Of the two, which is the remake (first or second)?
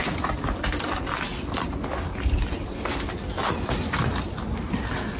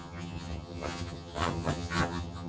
second